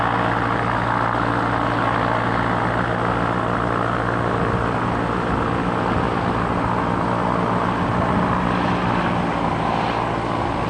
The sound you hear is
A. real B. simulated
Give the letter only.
A